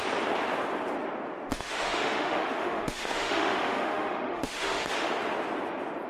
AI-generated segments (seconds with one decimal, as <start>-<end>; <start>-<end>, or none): 1.5-5.1

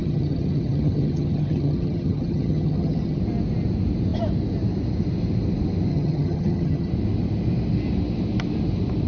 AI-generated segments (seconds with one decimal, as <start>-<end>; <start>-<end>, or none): 0.0-3.2; 5.9-6.9

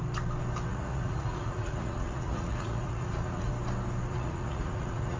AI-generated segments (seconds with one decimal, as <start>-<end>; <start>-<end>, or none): 0.7-3.5; 4.1-5.2

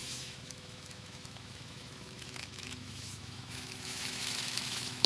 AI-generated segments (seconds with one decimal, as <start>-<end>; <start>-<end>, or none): 0.0-5.1

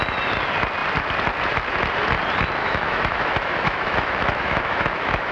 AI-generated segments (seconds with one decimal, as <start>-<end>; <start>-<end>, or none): 2.6-5.3

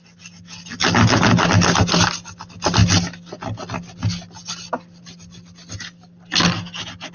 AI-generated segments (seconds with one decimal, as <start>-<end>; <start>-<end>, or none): none

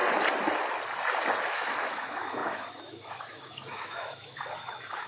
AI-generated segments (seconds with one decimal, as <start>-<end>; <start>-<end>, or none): 1.4-5.1